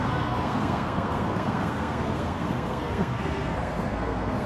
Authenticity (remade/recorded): remade